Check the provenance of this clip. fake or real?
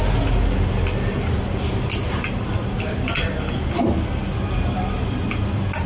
real